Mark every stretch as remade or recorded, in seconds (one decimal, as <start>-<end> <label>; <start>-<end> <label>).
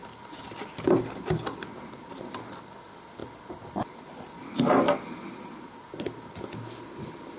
0.0-7.4 recorded